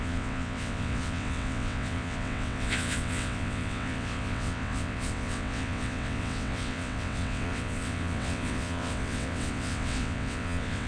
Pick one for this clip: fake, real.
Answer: fake